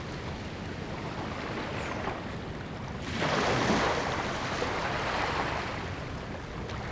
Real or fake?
real